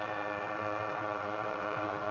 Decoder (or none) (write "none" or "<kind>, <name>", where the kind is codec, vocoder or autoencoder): vocoder, WaveNeXt